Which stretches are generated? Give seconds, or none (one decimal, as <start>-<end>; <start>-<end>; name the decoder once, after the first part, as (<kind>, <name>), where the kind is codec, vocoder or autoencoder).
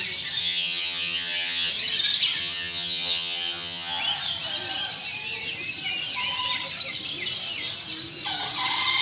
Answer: 0.4-1.7 (vocoder, HiFi-GAN); 2.4-4.0